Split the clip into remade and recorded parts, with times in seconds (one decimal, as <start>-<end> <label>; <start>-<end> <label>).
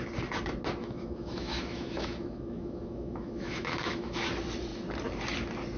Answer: 0.0-0.8 recorded; 0.8-4.3 remade; 4.3-5.8 recorded